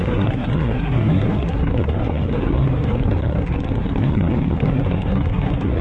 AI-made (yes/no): yes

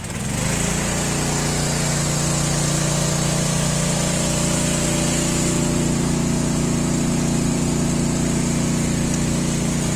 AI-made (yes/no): no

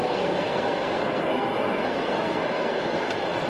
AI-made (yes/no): yes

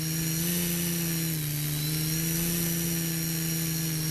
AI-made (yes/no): no